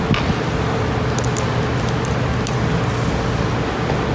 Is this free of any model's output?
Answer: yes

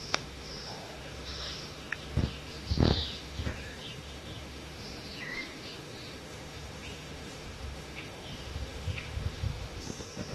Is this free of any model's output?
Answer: no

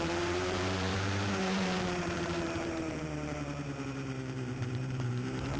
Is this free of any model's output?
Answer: no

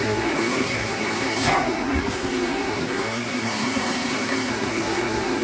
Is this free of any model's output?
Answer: no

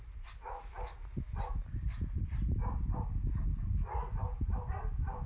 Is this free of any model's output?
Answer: yes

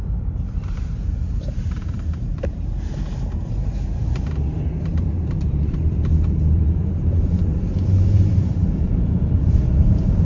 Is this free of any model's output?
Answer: no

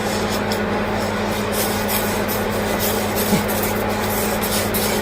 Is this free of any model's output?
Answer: yes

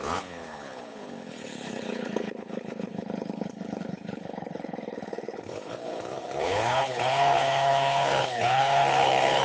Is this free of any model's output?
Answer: no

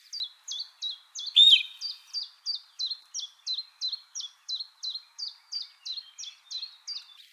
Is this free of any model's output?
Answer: yes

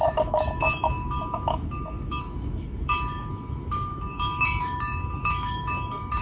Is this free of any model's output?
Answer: no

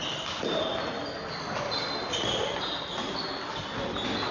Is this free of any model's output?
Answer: yes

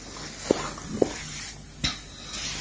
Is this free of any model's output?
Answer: yes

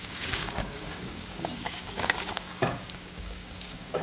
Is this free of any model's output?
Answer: no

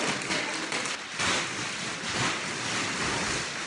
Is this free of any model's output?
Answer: no